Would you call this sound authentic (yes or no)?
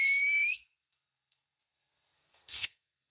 no